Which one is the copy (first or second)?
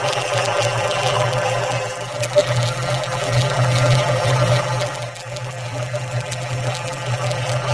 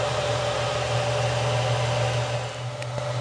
first